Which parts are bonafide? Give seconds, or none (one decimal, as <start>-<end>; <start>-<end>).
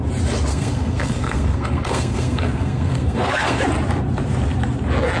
0.0-0.5; 3.6-5.2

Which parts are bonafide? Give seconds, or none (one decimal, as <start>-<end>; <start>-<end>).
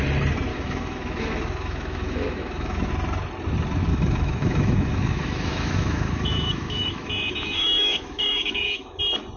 0.0-0.5; 2.9-3.9; 9.0-9.4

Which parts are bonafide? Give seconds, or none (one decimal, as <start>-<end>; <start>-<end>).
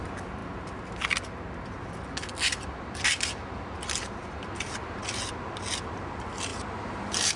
0.0-7.4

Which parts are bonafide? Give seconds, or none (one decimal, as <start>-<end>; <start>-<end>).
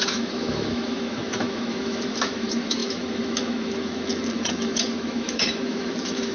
none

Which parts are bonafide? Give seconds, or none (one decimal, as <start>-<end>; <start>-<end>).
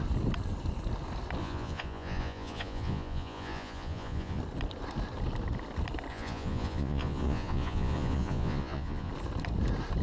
0.0-1.4; 4.4-6.1; 9.1-10.0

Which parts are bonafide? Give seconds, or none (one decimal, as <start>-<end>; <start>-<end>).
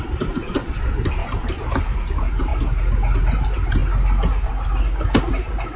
2.5-3.2; 3.8-5.3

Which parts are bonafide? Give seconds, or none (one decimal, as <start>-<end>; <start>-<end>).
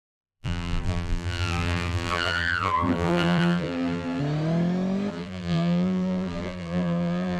4.2-5.1